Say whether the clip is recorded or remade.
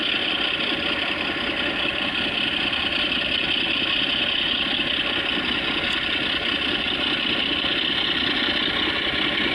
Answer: recorded